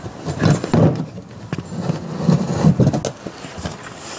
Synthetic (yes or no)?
no